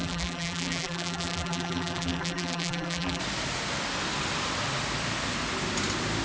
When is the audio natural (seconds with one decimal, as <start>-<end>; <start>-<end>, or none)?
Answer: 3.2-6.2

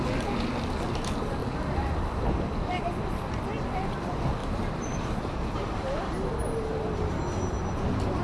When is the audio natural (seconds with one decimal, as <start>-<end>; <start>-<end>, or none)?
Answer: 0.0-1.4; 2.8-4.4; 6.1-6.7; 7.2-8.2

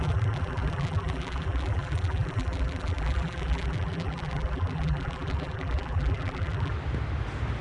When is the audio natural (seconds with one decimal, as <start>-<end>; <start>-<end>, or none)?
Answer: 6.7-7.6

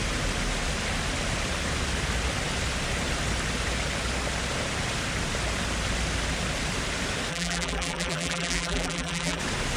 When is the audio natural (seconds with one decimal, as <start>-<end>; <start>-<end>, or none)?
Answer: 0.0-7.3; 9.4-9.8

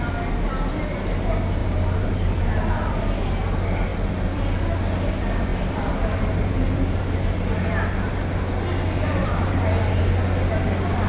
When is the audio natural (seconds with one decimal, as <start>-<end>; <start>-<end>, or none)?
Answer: 0.0-1.6; 3.0-5.5; 8.2-9.2; 10.0-11.1

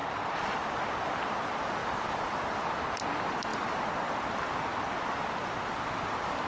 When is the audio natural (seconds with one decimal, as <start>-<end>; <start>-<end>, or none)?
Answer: 1.3-1.8; 2.6-6.5